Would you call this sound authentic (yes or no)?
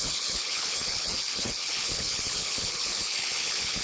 no